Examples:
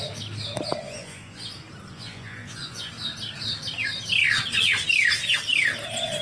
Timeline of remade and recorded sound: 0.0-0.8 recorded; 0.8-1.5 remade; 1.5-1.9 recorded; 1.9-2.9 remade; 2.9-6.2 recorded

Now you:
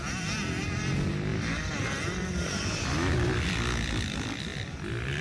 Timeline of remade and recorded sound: 0.0-5.2 recorded

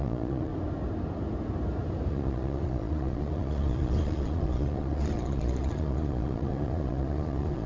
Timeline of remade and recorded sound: 0.0-0.5 remade; 0.5-2.1 recorded; 2.1-7.7 remade